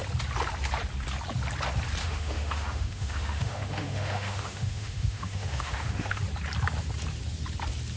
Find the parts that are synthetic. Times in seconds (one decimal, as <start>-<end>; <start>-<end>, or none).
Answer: 2.0-6.2

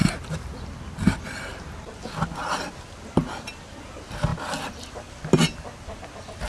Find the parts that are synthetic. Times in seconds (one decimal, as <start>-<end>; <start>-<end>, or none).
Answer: none

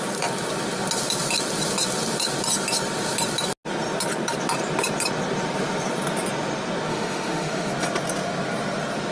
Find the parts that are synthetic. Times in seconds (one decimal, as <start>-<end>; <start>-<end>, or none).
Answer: 6.9-7.7

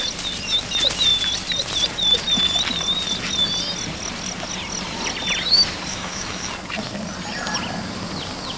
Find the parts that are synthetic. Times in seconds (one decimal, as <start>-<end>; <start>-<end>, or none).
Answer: 5.9-6.5

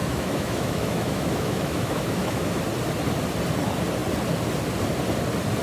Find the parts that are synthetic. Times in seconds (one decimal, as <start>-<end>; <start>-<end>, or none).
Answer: 0.0-2.5

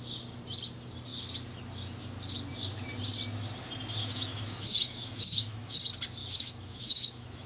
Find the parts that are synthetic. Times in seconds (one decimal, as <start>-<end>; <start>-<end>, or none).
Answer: 4.0-5.8; 6.2-7.5

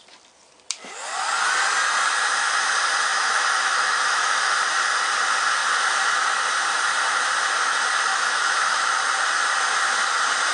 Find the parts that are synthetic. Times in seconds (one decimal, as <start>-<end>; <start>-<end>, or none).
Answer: 3.1-4.5; 8.1-8.9